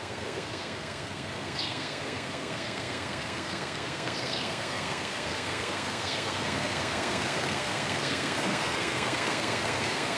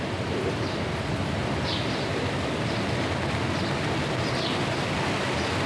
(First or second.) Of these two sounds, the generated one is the first